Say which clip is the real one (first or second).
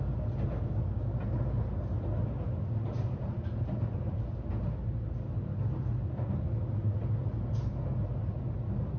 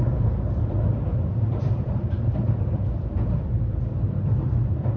first